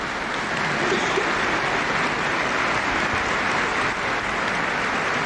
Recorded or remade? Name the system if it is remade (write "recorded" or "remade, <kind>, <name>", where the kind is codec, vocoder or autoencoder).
recorded